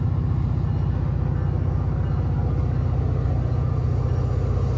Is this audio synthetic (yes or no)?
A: no